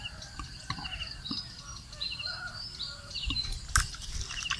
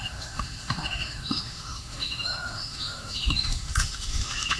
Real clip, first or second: first